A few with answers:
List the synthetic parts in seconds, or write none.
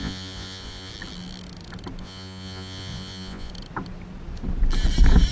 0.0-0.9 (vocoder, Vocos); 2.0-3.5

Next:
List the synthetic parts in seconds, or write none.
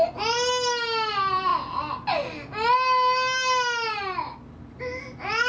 none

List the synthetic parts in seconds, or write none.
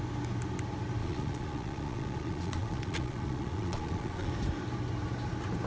1.0-4.3 (vocoder, Vocos)